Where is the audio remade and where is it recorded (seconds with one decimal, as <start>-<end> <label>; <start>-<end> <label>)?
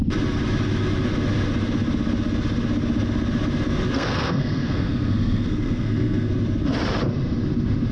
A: 0.0-3.9 recorded; 3.9-6.3 remade; 6.3-7.9 recorded